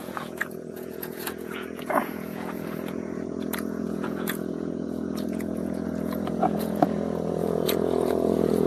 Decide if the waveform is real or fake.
fake